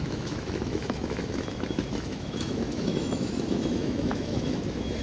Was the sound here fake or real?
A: fake